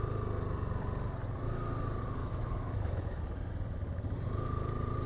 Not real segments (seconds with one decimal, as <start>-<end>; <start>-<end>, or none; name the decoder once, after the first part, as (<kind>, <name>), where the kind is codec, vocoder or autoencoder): 2.2-3.2 (autoencoder, DAC-VAE)